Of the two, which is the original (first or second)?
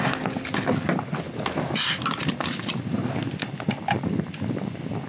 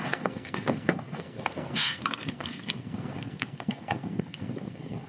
first